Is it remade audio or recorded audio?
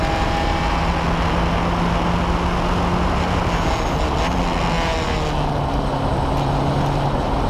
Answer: recorded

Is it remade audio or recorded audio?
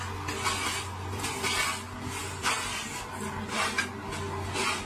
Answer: recorded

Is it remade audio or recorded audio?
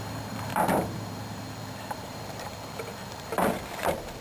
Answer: remade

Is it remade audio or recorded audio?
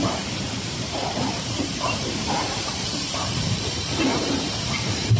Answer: remade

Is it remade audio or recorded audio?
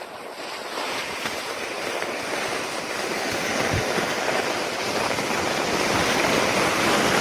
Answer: remade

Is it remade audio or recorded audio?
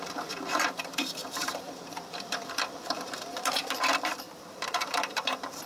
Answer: remade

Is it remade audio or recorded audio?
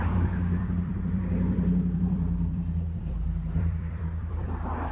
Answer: remade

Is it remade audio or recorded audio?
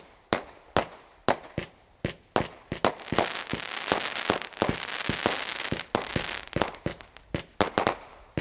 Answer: recorded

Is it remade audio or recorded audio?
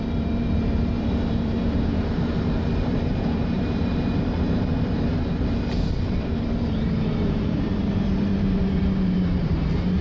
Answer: remade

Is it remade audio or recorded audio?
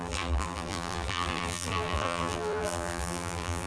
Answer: remade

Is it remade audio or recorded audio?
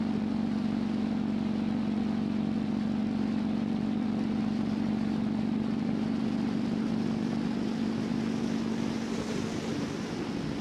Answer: recorded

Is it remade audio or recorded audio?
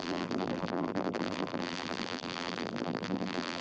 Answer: remade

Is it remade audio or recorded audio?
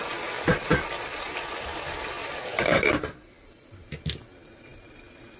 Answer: recorded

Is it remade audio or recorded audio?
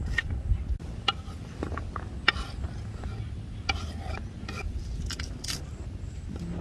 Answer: recorded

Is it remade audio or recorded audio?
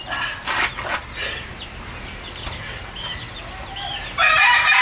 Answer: recorded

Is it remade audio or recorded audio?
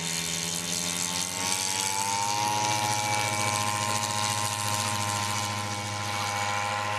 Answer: recorded